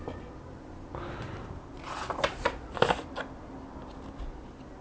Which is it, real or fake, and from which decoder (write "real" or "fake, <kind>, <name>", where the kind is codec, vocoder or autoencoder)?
real